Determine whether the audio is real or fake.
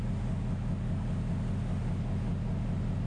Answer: real